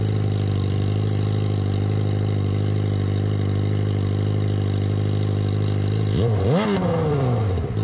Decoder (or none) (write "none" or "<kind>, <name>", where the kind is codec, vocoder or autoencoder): none